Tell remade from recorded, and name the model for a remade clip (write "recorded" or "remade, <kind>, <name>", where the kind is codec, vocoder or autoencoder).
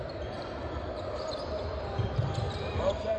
remade, vocoder, BigVGAN v2